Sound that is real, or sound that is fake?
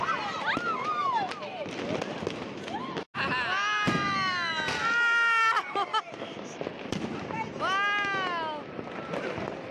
real